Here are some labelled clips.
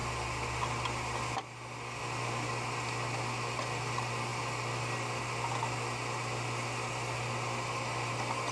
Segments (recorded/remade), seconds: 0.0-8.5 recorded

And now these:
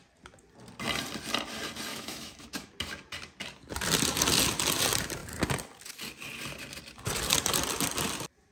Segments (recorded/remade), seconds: 0.0-1.9 recorded; 1.9-2.7 remade; 2.7-8.5 recorded

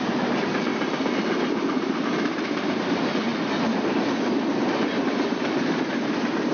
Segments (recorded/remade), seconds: 0.0-3.3 remade; 3.3-4.6 recorded; 4.6-6.5 remade